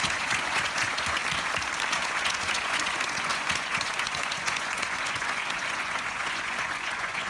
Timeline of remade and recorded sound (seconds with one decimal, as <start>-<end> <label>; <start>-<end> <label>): 0.0-1.2 remade; 1.2-1.9 recorded; 1.9-7.3 remade